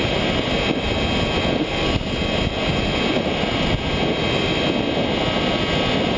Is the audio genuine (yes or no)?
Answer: yes